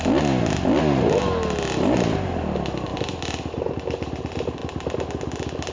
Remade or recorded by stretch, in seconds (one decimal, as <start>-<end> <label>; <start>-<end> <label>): 0.0-5.7 recorded